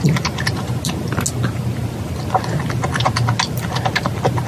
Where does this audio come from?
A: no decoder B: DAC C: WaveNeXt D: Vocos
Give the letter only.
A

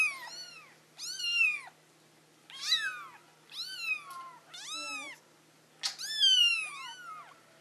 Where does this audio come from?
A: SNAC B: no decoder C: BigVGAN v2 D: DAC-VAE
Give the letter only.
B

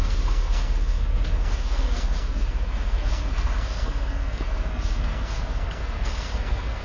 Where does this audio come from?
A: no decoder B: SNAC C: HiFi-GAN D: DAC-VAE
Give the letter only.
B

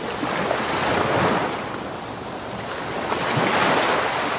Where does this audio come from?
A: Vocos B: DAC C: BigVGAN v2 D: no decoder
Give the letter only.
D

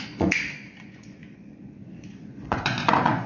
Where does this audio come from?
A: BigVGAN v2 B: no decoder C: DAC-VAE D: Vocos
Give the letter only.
D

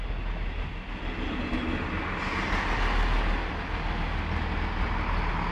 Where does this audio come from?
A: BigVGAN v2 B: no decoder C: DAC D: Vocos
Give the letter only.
B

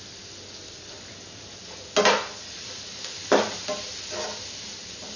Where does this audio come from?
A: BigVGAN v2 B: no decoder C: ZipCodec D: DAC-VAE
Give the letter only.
B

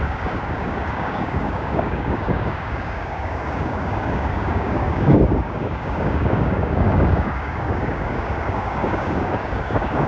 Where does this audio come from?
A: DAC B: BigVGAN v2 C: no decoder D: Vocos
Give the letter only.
A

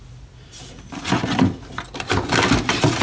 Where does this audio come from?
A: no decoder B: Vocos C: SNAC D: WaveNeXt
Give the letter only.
A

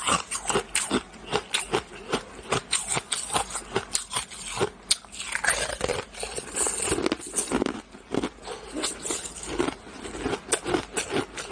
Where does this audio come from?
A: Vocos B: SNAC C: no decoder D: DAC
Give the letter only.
C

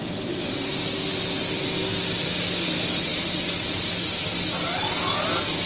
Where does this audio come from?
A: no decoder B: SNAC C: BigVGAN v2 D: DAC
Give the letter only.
A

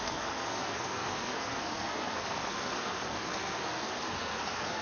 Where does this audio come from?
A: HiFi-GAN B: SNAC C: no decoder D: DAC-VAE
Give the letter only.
B